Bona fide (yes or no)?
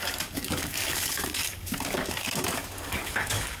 no